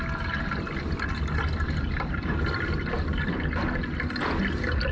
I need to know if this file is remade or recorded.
recorded